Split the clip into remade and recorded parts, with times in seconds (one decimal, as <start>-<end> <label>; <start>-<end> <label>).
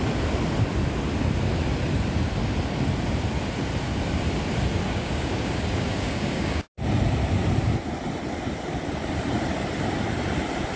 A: 0.0-4.8 recorded; 4.8-6.6 remade; 6.6-10.8 recorded